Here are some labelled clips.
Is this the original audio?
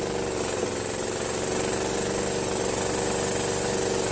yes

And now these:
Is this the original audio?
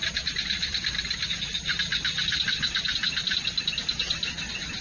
yes